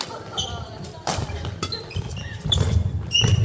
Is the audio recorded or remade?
recorded